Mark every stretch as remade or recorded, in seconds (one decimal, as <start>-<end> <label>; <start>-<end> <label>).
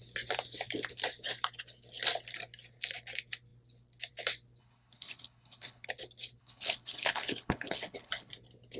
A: 0.0-4.6 recorded; 4.6-5.9 remade; 5.9-6.4 recorded; 6.4-8.3 remade; 8.3-8.8 recorded